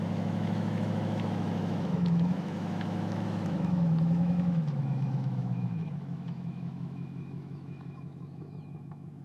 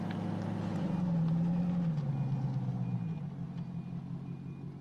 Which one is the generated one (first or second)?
first